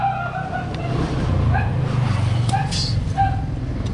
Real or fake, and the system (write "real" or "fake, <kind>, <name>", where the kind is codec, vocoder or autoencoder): real